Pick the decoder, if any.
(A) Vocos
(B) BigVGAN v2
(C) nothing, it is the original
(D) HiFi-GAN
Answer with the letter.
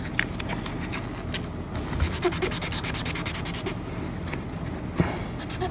C